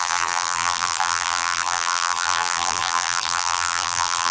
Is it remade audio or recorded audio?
remade